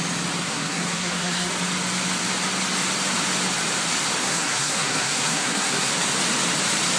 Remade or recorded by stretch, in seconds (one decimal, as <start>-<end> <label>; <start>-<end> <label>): 0.0-0.4 recorded; 0.4-1.5 remade; 1.5-4.2 recorded; 4.2-5.9 remade; 5.9-7.0 recorded